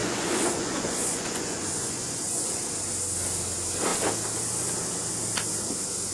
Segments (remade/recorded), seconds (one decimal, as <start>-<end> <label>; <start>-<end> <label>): 0.0-2.6 remade; 2.6-6.1 recorded